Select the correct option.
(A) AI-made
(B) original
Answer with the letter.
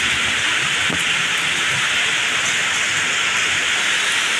B